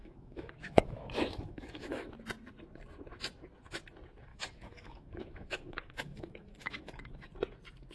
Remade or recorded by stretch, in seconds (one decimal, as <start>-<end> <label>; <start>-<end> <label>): 0.0-2.1 remade; 2.1-4.3 recorded; 4.3-7.1 remade; 7.1-7.9 recorded